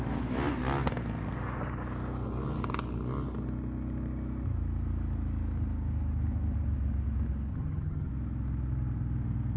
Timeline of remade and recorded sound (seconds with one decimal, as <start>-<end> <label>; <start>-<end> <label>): 0.0-7.5 recorded; 7.5-8.1 remade; 8.1-9.6 recorded